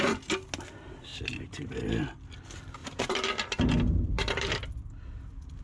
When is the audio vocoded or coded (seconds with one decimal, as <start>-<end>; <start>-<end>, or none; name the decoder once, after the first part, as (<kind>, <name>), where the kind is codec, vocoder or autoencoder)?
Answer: 1.1-1.7 (vocoder, BigVGAN v2); 2.8-4.7